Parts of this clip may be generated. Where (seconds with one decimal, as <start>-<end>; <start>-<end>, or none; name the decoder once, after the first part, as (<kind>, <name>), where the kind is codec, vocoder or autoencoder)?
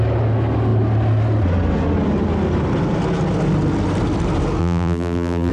4.6-5.5 (vocoder, BigVGAN v2)